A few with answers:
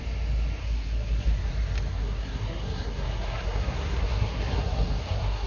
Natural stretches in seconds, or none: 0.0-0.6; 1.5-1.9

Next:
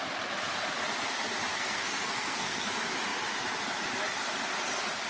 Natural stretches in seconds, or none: 0.0-1.5; 2.7-5.1

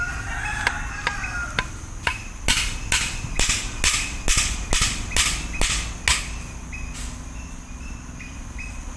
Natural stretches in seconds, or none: 0.0-9.0

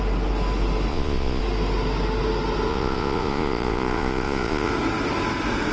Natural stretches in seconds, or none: 0.0-0.9; 1.4-2.7; 4.7-5.7

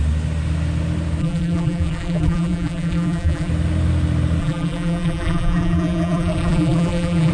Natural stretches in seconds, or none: 0.0-1.2; 3.5-4.4